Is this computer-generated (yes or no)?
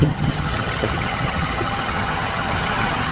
yes